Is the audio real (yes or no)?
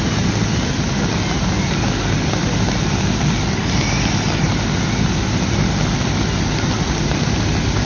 yes